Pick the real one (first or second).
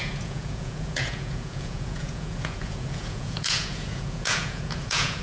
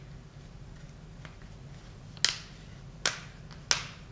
second